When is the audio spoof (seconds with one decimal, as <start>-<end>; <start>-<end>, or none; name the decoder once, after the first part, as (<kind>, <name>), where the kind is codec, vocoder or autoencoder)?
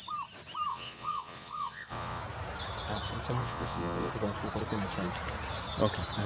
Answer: 0.7-2.2 (vocoder, WaveNeXt); 3.4-4.1